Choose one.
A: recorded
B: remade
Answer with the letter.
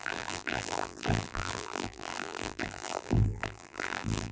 B